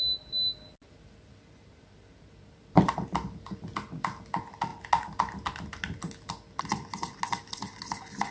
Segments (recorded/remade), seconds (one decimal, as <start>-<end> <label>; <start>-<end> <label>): 0.0-8.3 recorded